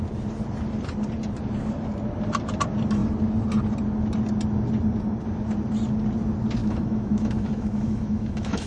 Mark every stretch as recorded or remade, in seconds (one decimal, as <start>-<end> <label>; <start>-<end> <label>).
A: 0.0-6.6 recorded; 6.6-8.7 remade